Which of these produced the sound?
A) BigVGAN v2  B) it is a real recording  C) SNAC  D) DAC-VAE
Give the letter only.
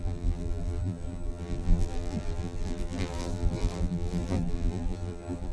A